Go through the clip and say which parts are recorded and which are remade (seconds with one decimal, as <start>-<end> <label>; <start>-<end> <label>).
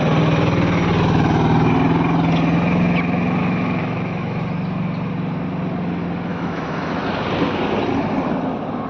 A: 0.0-3.4 recorded; 3.4-4.4 remade; 4.4-6.3 recorded; 6.3-7.0 remade; 7.0-8.9 recorded